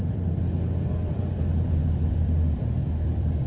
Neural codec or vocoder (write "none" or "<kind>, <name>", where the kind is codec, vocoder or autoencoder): vocoder, BigVGAN v2